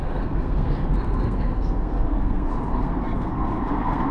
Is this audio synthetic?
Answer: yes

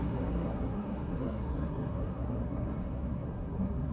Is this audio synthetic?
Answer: yes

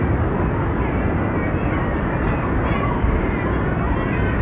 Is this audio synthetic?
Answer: no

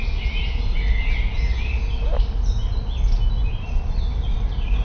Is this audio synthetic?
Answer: no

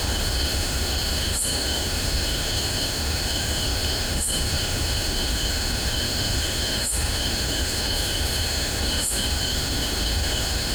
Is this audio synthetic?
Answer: yes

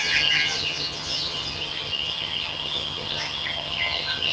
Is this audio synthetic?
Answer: yes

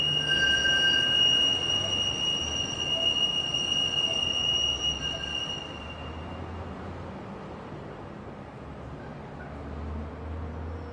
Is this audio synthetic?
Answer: no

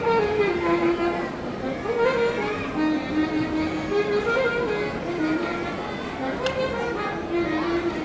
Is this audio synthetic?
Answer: no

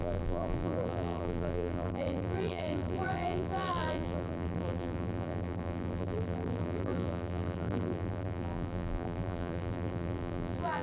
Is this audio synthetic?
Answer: yes